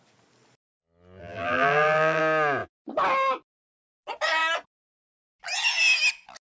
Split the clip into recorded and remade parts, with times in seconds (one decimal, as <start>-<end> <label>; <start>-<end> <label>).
0.0-1.2 recorded; 1.2-2.2 remade; 2.2-6.5 recorded